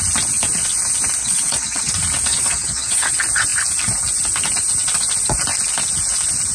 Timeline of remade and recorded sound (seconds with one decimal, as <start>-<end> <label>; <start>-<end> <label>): 0.0-1.2 recorded; 1.2-1.9 remade; 1.9-2.3 recorded; 2.3-3.1 remade; 3.1-6.5 recorded